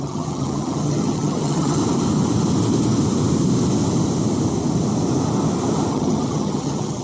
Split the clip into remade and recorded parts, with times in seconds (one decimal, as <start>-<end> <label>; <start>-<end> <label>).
0.0-1.8 remade; 1.8-5.9 recorded; 5.9-7.0 remade